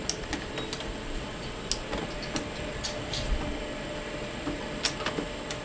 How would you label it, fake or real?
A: real